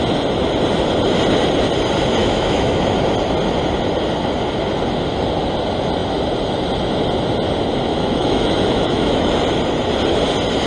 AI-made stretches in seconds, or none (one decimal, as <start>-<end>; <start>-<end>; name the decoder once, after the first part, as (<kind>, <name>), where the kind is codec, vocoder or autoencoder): 2.2-2.8 (autoencoder, DAC-VAE); 7.9-9.3